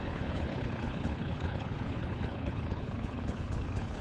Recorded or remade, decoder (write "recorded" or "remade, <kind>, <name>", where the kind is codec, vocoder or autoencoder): remade, codec, HILCodec